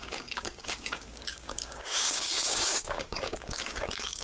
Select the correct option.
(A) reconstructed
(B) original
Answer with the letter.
A